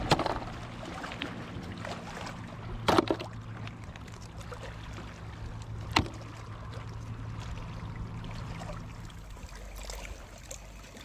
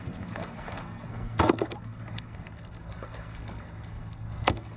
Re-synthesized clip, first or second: second